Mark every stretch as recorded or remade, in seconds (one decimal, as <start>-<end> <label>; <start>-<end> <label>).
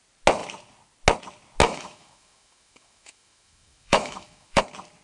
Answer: 0.0-1.6 recorded; 1.6-4.6 remade; 4.6-5.0 recorded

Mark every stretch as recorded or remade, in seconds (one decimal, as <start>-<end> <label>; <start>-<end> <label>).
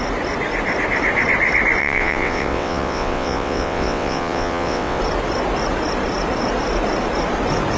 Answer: 0.0-1.8 recorded; 1.8-5.0 remade; 5.0-7.8 recorded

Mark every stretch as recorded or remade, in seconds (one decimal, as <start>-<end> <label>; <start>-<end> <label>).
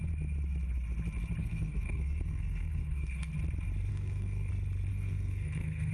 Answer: 0.0-1.4 recorded; 1.4-3.3 remade; 3.3-3.9 recorded; 3.9-4.5 remade; 4.5-4.9 recorded; 4.9-5.9 remade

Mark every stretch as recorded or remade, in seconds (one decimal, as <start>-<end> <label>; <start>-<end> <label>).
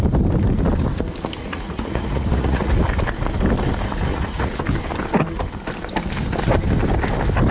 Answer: 0.0-1.4 recorded; 1.4-2.7 remade; 2.7-4.1 recorded; 4.1-4.6 remade; 4.6-7.5 recorded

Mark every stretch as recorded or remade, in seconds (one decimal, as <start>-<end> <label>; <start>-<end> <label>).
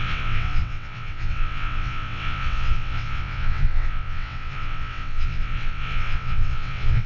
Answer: 0.0-7.1 remade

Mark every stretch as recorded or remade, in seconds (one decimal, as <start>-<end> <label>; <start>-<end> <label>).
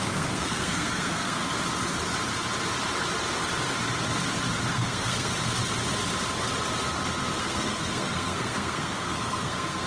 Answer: 0.0-1.4 remade; 1.4-4.7 recorded; 4.7-5.3 remade; 5.3-7.4 recorded; 7.4-9.9 remade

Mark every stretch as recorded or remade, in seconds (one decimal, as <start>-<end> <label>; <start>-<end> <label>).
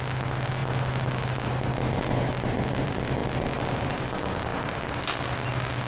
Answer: 0.0-5.9 recorded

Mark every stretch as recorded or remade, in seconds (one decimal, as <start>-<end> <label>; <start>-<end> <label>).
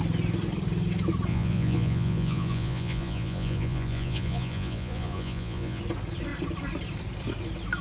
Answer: 0.0-1.3 recorded; 1.3-5.8 remade; 5.8-7.8 recorded